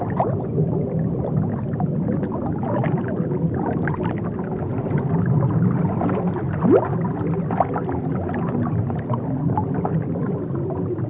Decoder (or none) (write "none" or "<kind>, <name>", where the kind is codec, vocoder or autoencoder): none